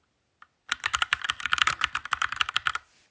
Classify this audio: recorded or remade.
remade